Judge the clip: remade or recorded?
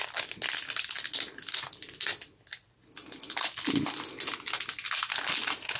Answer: recorded